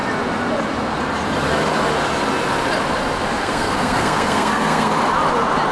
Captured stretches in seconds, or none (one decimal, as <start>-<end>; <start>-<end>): 0.0-3.4; 4.9-5.7